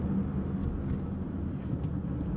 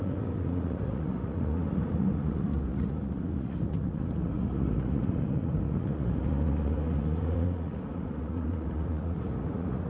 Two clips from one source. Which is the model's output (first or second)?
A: second